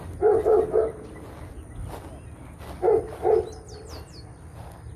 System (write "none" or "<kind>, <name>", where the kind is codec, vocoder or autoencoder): none